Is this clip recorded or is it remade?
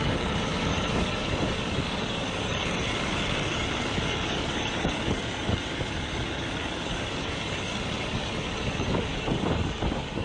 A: remade